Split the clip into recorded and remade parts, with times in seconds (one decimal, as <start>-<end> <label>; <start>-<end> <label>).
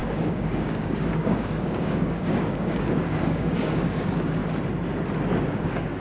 0.0-4.4 remade; 4.4-5.4 recorded; 5.4-6.0 remade